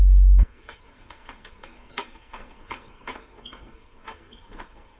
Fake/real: fake